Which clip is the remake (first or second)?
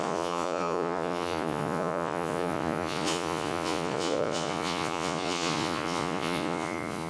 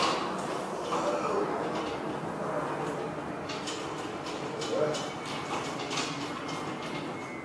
first